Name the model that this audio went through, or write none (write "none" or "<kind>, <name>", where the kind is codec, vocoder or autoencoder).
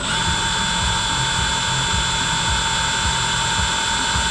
none